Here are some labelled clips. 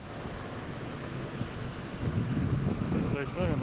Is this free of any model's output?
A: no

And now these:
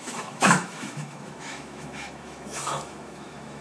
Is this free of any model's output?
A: no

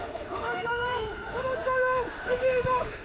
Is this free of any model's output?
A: no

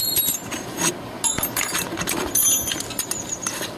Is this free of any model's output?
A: yes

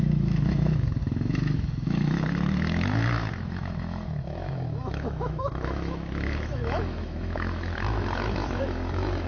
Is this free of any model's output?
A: no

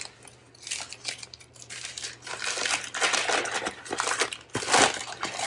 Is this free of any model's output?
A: yes